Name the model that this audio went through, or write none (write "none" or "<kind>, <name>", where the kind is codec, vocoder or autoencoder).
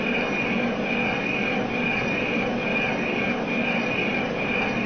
none